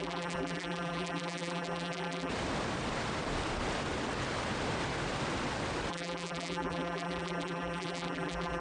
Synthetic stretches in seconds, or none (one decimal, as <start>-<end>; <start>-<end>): 0.0-2.3; 5.9-8.6